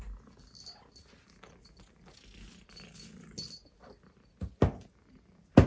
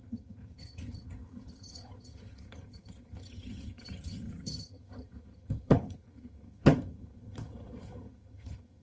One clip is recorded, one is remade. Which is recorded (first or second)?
first